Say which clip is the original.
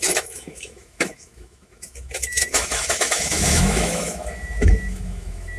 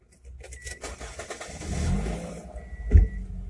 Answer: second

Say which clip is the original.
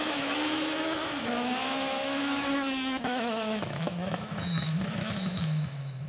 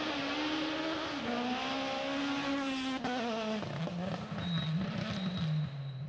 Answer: second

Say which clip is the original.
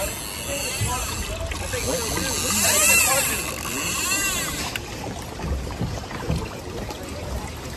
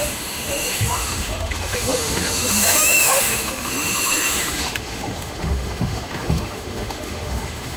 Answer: first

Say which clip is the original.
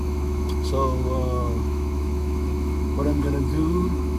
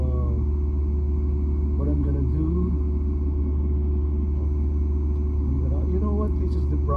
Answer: second